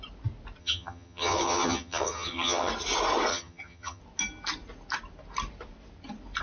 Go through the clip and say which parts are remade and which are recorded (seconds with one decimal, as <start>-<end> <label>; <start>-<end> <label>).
0.0-0.6 recorded; 0.6-2.7 remade; 2.7-3.3 recorded; 3.3-4.0 remade; 4.0-6.4 recorded